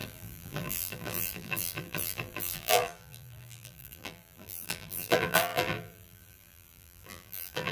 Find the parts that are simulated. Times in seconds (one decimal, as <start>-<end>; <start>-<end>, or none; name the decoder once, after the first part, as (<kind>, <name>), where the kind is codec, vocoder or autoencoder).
0.0-7.7 (vocoder, BigVGAN v2)